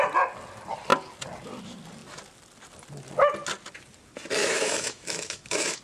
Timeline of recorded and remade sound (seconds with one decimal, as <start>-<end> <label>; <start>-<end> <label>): 0.0-4.4 recorded; 4.4-5.8 remade